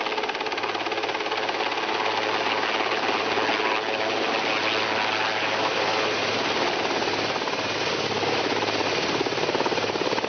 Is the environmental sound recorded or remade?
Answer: recorded